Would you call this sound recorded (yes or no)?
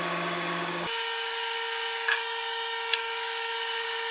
no